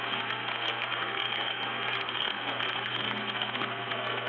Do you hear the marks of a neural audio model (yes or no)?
yes